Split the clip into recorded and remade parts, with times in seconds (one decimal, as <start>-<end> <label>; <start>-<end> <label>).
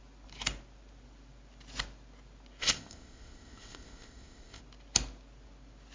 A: 0.0-2.6 recorded; 2.6-4.6 remade; 4.6-5.9 recorded